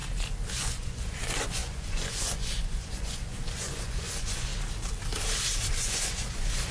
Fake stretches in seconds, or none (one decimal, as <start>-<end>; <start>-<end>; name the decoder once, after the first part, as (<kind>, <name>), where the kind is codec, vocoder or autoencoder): 0.5-4.5 (vocoder, Vocos); 5.7-6.7